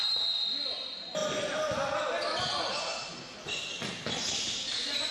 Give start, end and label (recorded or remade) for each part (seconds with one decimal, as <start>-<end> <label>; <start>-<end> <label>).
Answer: 0.0-5.1 recorded